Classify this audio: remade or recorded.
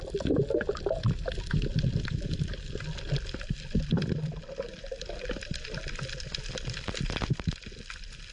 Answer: recorded